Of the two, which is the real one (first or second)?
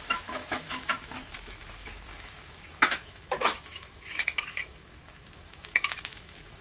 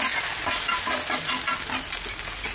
second